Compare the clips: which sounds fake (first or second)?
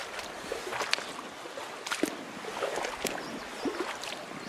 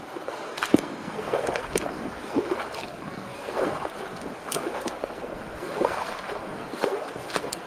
second